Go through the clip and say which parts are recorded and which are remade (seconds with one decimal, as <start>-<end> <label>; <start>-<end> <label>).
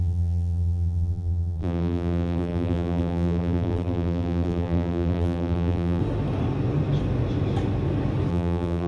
0.0-6.0 remade; 6.0-8.3 recorded; 8.3-8.9 remade